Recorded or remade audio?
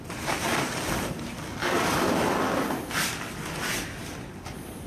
recorded